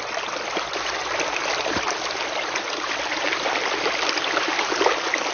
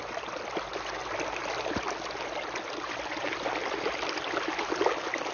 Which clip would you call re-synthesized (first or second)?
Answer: first